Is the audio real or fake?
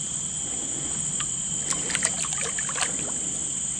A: real